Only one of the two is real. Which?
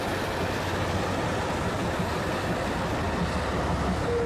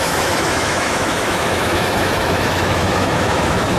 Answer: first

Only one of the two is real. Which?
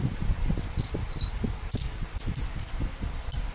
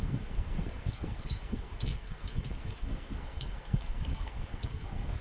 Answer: first